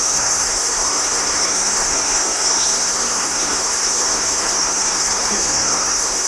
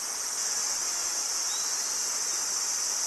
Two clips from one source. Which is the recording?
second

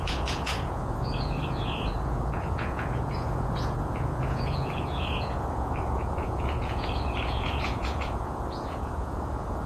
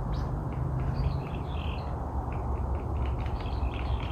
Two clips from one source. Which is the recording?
second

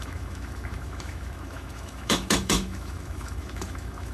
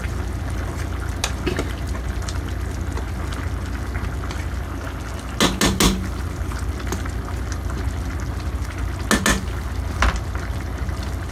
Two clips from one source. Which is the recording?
second